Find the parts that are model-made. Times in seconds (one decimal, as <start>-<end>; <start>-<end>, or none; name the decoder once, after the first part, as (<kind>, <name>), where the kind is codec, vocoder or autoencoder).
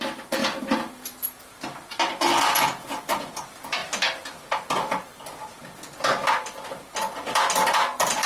0.0-3.8 (vocoder, BigVGAN v2); 6.9-8.3